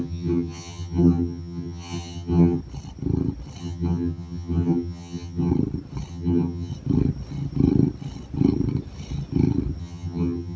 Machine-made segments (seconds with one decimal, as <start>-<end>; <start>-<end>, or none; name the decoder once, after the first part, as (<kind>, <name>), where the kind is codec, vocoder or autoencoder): 0.0-2.6 (vocoder, HiFi-GAN); 3.6-5.5; 6.1-6.7; 9.8-10.6